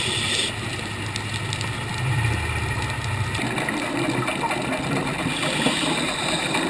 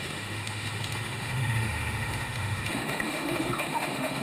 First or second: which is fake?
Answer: second